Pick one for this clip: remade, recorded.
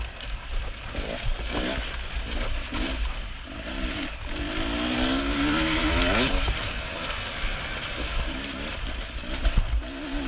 recorded